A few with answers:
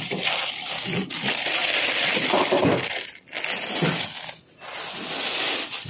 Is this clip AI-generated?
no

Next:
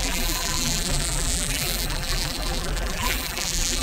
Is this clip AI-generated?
yes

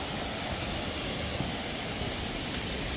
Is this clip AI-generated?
no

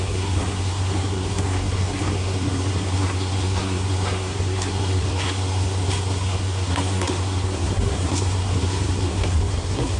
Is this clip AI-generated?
yes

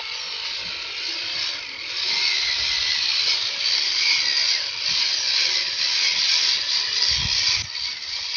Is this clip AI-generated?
no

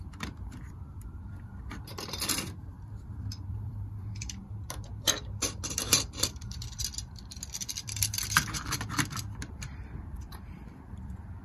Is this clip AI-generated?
yes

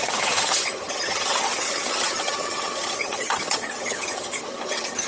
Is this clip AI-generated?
yes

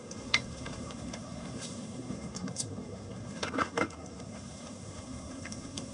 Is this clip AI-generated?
yes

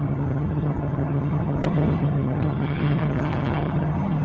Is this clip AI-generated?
yes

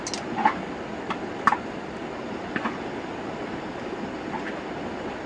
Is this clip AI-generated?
no